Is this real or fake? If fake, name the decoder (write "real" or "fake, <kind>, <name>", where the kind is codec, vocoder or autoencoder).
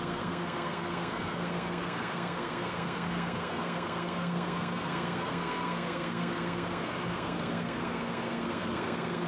fake, codec, SNAC